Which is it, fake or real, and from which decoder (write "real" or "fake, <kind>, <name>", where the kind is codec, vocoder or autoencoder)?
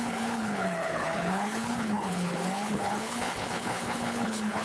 fake, codec, HILCodec